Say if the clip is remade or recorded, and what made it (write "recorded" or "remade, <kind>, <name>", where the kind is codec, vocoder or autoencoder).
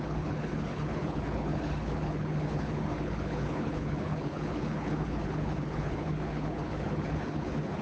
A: remade, codec, HILCodec